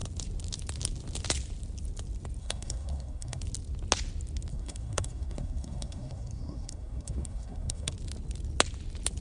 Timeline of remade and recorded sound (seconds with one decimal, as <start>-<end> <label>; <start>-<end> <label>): 0.0-2.4 recorded; 2.4-3.4 remade; 3.4-4.5 recorded; 4.5-7.9 remade; 7.9-9.2 recorded